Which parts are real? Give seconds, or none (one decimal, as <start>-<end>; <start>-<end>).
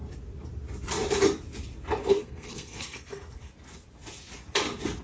0.0-2.0; 3.5-5.0